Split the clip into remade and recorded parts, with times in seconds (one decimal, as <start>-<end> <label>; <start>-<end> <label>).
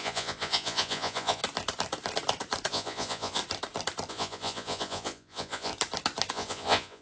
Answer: 0.0-1.4 remade; 1.4-2.7 recorded; 2.7-3.4 remade; 3.4-4.1 recorded; 4.1-5.7 remade; 5.7-6.3 recorded; 6.3-7.0 remade